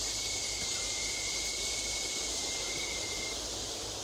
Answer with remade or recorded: recorded